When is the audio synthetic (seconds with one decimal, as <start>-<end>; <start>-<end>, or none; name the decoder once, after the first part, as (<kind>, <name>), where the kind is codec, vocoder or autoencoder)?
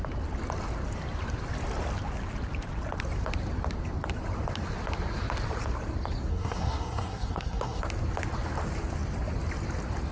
6.3-7.8 (codec, SNAC)